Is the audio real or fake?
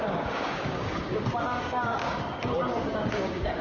fake